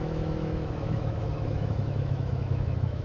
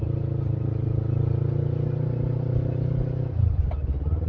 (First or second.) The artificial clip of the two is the first